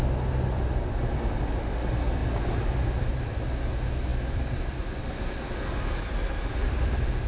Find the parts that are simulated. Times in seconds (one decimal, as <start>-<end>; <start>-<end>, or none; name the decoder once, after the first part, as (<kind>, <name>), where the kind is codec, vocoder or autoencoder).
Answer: 4.1-5.2 (vocoder, BigVGAN v2)